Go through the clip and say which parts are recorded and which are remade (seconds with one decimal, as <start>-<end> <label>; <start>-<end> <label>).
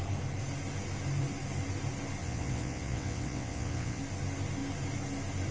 0.0-2.2 recorded; 2.2-4.0 remade; 4.0-5.5 recorded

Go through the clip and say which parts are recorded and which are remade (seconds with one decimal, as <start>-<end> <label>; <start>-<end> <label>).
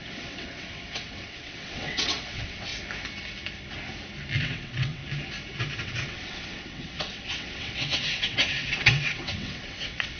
0.0-2.7 remade; 2.7-4.4 recorded; 4.4-5.0 remade; 5.0-5.8 recorded; 5.8-10.2 remade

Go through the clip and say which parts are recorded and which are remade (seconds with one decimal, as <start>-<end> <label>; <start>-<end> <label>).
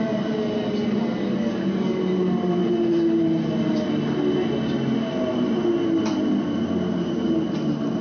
0.0-8.0 recorded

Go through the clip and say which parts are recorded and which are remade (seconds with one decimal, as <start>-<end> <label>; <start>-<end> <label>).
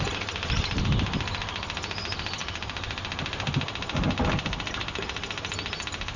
0.0-6.2 recorded